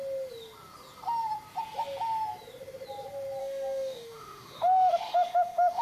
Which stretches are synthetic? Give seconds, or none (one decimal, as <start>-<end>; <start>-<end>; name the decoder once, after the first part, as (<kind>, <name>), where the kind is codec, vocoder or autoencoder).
3.4-5.8 (autoencoder, DAC-VAE)